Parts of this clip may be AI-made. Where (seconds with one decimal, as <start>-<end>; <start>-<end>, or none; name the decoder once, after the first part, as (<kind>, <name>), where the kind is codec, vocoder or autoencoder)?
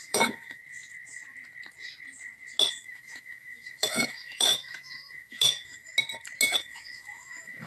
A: 0.0-0.6 (autoencoder, DAC-VAE); 2.7-5.9; 6.6-7.7